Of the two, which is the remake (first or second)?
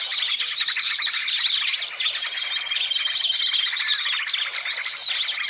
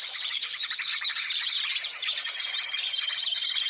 second